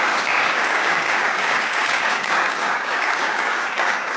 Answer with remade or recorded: remade